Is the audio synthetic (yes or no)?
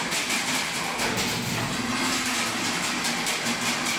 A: no